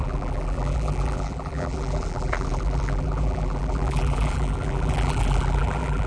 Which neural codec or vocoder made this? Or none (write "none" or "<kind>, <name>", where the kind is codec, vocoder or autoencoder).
vocoder, BigVGAN v2